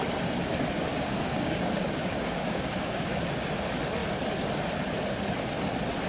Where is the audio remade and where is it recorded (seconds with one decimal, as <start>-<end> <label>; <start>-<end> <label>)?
0.0-0.9 recorded; 0.9-3.1 remade; 3.1-6.1 recorded